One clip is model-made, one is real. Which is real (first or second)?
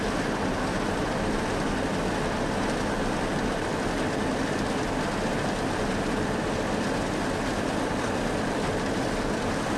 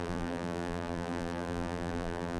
first